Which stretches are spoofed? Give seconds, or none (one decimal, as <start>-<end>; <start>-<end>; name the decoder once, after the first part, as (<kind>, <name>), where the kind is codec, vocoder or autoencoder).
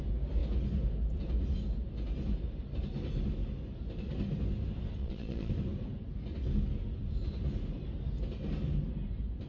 5.0-5.5 (vocoder, Vocos)